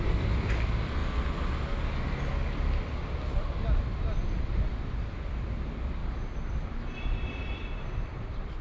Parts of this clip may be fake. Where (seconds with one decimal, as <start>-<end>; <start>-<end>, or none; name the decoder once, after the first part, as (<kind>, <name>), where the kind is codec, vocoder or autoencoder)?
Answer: 0.0-1.0 (vocoder, BigVGAN v2); 4.4-6.0; 6.5-8.6